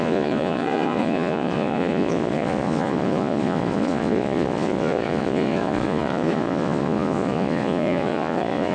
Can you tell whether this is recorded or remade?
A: remade